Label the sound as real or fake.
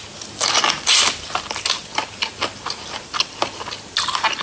real